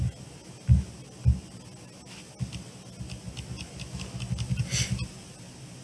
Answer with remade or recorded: recorded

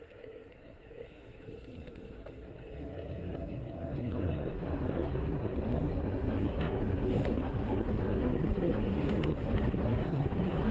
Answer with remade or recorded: remade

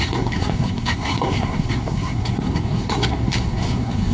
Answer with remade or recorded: remade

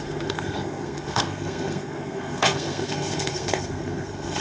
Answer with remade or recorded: remade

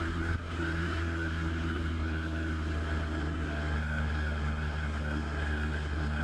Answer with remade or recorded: remade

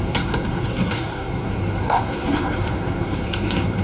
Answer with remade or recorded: remade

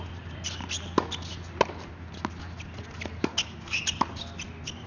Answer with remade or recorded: recorded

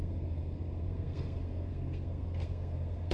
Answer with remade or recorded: remade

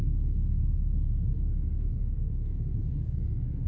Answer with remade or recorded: remade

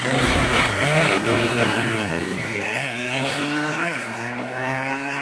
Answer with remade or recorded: remade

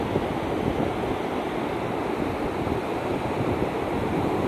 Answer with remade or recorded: recorded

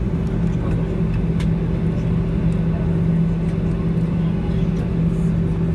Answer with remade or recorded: recorded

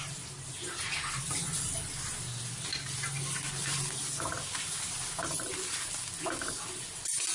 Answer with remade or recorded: recorded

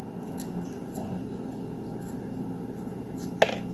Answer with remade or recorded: recorded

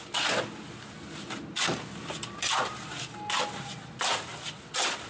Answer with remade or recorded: recorded